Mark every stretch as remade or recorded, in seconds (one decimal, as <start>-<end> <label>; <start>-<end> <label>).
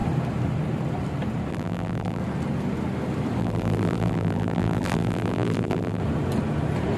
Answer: 0.0-1.5 recorded; 1.5-2.2 remade; 2.2-3.4 recorded; 3.4-6.0 remade; 6.0-7.0 recorded